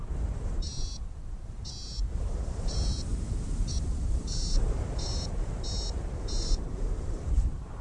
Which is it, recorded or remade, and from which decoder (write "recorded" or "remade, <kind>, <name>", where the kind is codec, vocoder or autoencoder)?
remade, vocoder, BigVGAN v2